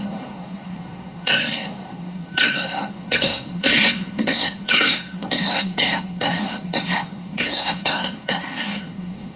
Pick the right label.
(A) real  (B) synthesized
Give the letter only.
B